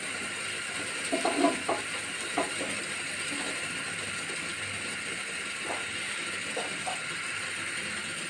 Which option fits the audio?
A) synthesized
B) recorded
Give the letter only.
B